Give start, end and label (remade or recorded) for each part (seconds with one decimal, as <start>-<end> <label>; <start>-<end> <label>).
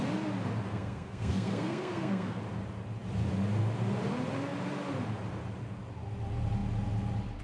0.0-0.7 recorded; 0.7-2.4 remade; 2.4-7.4 recorded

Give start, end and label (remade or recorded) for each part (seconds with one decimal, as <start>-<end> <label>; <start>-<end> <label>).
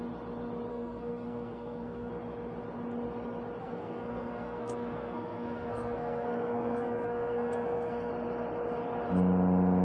0.0-0.7 recorded; 0.7-2.1 remade; 2.1-3.6 recorded; 3.6-8.1 remade; 8.1-9.8 recorded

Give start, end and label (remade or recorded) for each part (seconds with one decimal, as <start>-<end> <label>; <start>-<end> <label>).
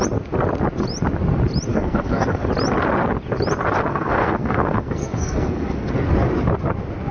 0.0-1.7 recorded; 1.7-2.5 remade; 2.5-3.9 recorded; 3.9-5.9 remade; 5.9-7.1 recorded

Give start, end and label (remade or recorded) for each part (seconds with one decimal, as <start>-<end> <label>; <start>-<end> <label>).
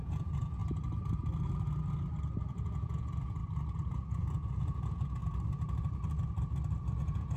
0.0-0.6 remade; 0.6-2.4 recorded; 2.4-3.4 remade; 3.4-3.9 recorded; 3.9-5.2 remade; 5.2-7.0 recorded; 7.0-7.4 remade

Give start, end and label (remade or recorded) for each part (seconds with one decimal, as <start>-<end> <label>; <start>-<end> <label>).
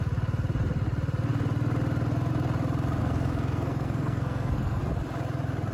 0.0-3.0 recorded; 3.0-4.8 remade; 4.8-5.7 recorded